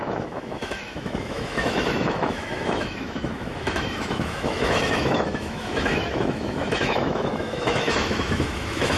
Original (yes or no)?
no